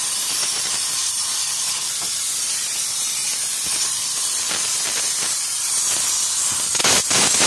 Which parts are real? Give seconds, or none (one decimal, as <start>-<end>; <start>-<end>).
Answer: 3.2-6.8